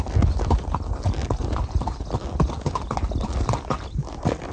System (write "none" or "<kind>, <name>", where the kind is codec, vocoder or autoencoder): none